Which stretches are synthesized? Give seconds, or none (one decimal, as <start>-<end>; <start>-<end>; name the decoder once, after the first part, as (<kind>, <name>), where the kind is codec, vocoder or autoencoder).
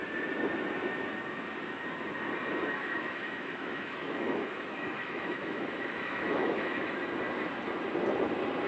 2.8-7.0 (autoencoder, DAC-VAE)